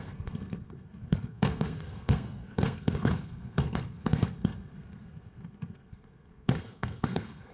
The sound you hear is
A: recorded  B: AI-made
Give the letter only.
B